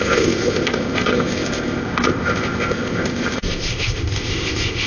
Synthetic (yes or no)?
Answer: yes